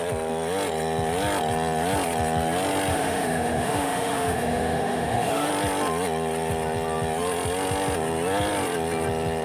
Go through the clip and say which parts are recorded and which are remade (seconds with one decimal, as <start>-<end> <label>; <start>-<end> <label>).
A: 0.0-2.9 recorded; 2.9-5.5 remade; 5.5-9.4 recorded